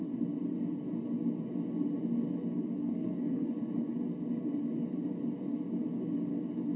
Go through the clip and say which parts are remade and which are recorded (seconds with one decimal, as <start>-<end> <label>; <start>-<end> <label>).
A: 0.0-2.8 recorded; 2.8-3.5 remade; 3.5-6.8 recorded

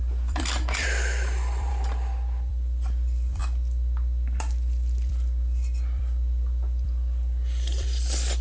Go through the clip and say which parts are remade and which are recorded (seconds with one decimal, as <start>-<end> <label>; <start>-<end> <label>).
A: 0.0-3.4 remade; 3.4-4.4 recorded; 4.4-8.4 remade

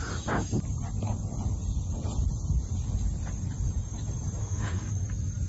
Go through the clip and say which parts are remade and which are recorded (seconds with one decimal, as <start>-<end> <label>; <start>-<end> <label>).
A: 0.0-4.4 recorded; 4.4-4.9 remade; 4.9-5.5 recorded